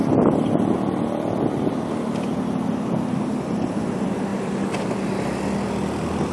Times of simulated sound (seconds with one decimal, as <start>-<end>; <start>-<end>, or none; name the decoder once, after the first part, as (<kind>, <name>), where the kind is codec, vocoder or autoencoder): none